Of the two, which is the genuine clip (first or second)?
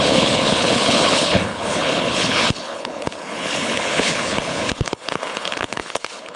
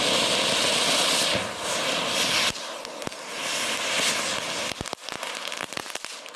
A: second